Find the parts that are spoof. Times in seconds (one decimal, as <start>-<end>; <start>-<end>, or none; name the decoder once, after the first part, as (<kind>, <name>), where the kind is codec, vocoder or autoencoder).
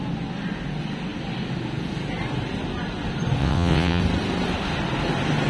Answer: 3.4-4.0 (vocoder, WaveNeXt)